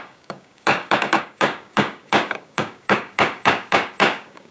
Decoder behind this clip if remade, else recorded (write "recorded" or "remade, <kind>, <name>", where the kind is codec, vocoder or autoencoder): remade, codec, DAC